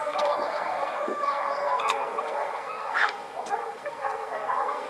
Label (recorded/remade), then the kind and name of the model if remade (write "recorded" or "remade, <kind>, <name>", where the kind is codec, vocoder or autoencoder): remade, codec, SNAC